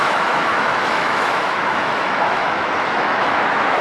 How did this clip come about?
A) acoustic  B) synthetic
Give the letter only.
B